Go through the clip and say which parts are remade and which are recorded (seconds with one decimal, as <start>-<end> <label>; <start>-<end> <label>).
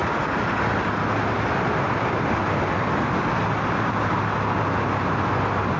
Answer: 0.0-5.8 recorded